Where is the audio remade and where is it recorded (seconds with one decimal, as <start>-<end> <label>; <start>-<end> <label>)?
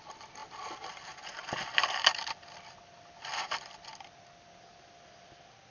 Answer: 0.0-5.7 recorded